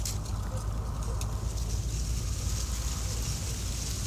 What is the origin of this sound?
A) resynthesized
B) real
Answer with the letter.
B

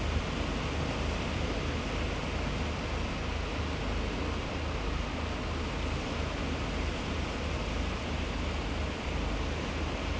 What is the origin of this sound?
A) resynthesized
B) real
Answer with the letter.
B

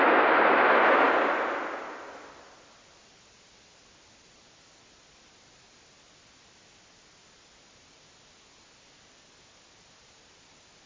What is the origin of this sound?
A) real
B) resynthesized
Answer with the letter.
A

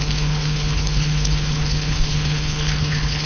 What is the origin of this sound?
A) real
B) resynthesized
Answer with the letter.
B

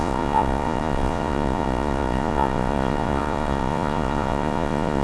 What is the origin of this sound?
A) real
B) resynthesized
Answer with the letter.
B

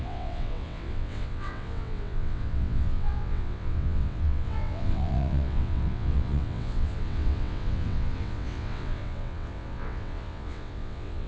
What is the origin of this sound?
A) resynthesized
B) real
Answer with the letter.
A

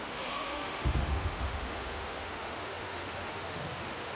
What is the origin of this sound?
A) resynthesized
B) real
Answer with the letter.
A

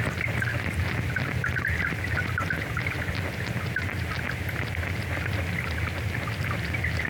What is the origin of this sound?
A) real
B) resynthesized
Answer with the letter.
A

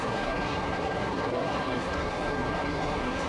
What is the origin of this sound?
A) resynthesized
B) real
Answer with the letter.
A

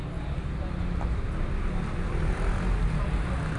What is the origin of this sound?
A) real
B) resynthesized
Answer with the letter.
A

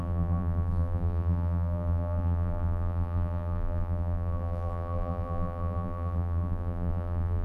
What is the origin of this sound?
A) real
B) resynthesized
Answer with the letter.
B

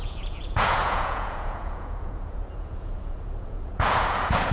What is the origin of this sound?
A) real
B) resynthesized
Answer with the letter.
B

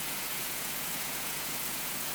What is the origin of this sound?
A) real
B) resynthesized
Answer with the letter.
B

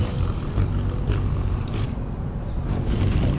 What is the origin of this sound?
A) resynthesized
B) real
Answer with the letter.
A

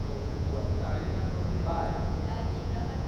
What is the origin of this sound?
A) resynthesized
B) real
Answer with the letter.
A